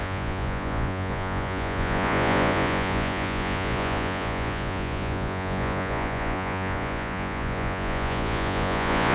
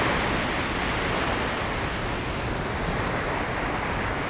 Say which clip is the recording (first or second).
second